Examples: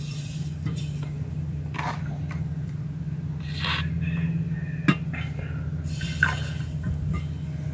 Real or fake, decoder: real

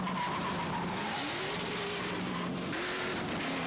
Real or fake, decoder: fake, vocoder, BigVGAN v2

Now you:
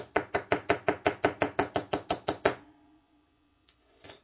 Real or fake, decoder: fake, vocoder, Vocos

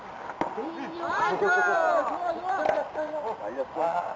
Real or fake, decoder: real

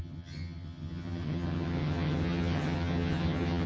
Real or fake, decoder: fake, vocoder, HiFi-GAN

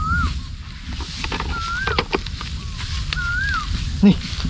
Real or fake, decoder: real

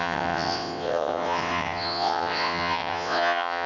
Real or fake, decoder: fake, vocoder, WaveNeXt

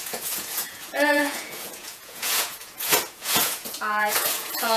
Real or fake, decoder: fake, vocoder, Vocos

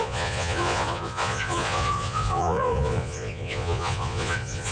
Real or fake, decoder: fake, vocoder, Vocos